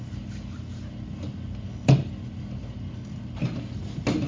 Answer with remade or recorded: recorded